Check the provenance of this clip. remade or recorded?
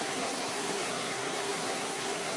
remade